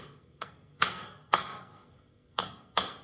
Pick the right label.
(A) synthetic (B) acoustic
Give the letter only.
A